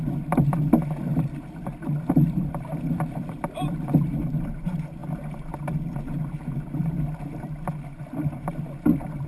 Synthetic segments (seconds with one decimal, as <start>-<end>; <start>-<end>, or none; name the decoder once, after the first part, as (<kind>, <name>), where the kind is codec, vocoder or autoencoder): 1.1-4.0 (vocoder, BigVGAN v2)